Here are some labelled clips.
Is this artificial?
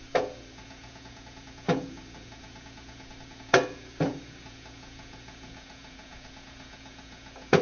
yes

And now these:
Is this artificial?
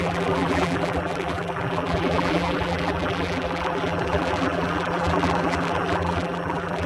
yes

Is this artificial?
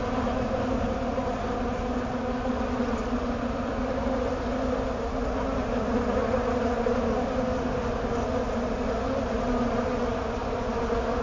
no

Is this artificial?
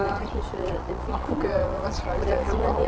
yes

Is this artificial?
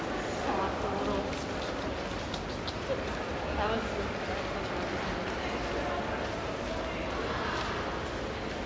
no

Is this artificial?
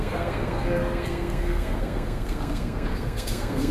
yes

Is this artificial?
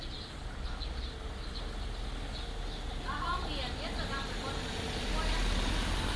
no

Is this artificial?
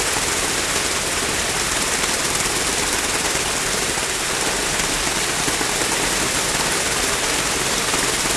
no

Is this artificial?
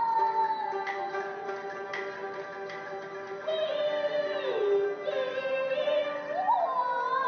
no